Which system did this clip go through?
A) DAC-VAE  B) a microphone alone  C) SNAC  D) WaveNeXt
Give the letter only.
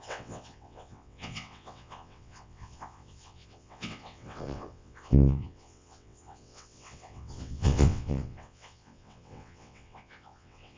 D